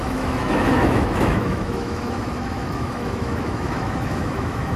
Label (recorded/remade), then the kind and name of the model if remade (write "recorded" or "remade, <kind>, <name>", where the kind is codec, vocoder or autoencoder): remade, autoencoder, DAC-VAE